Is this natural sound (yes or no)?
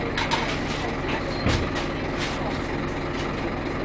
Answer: yes